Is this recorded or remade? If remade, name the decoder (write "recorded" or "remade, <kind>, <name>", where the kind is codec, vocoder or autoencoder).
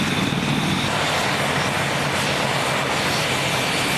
recorded